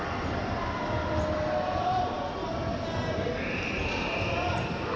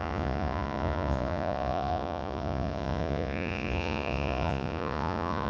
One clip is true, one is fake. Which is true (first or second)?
first